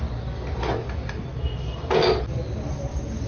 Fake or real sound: real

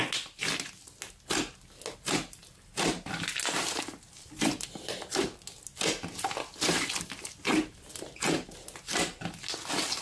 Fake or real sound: real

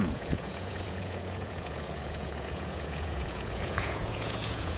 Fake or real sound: fake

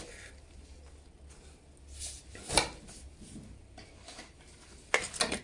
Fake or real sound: real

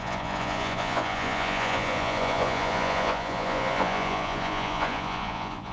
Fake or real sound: fake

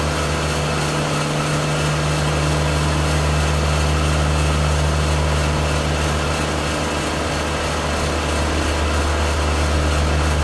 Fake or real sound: real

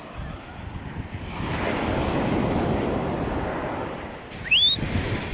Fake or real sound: real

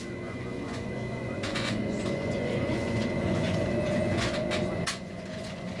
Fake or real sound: fake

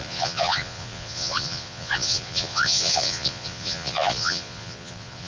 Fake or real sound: fake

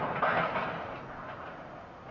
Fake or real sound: real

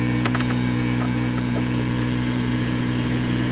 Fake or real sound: fake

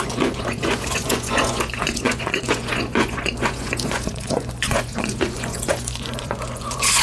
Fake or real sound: fake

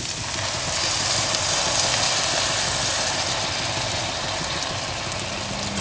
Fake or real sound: real